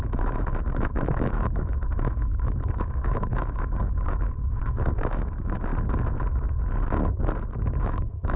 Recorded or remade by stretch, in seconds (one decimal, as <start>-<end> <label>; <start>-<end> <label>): 0.0-5.7 remade; 5.7-7.8 recorded; 7.8-8.4 remade